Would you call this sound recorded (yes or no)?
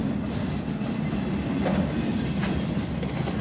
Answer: yes